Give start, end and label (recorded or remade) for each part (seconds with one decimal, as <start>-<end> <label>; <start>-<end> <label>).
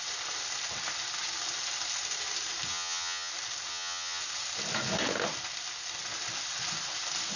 0.0-2.7 recorded; 2.7-3.3 remade; 3.3-3.7 recorded; 3.7-4.2 remade; 4.2-7.4 recorded